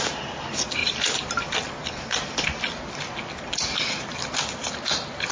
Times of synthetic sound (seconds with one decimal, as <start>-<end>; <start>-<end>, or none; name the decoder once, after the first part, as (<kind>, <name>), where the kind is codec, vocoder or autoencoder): none